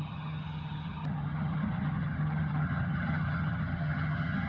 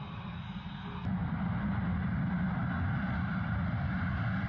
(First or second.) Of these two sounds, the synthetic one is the first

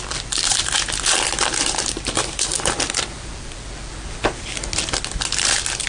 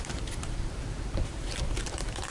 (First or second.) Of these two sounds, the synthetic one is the second